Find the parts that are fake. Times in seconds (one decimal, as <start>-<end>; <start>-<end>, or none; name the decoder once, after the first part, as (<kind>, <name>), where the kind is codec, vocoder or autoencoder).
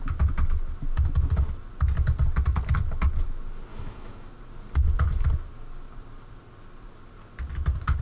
3.7-4.3 (autoencoder, DAC-VAE)